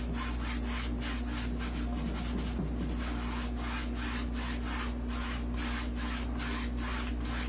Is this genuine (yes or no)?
yes